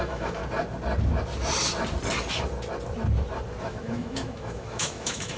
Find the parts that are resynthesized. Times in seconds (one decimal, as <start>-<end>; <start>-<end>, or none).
0.0-0.4; 3.6-5.4